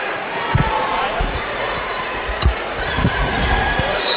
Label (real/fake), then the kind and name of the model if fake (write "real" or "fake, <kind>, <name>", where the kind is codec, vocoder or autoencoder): fake, vocoder, Vocos